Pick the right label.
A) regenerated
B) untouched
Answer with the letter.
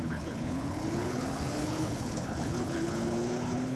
A